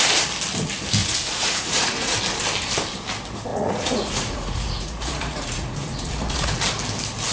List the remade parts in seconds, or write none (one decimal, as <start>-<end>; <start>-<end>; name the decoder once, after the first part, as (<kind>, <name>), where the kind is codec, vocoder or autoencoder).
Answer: 1.0-2.2 (vocoder, Vocos); 3.5-6.6